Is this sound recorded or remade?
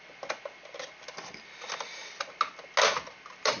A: recorded